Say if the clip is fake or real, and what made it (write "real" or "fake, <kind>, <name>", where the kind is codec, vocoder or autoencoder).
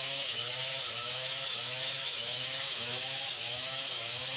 fake, autoencoder, DAC-VAE